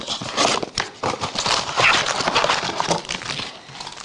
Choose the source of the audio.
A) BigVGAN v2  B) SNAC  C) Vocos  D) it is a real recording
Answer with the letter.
D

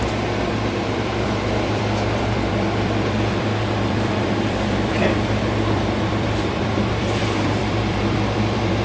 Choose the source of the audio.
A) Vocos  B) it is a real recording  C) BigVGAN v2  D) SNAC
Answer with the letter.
C